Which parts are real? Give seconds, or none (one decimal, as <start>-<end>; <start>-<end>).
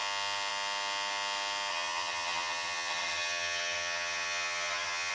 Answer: 0.0-1.7